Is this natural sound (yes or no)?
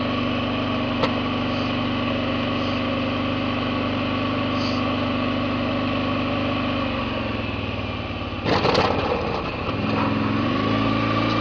yes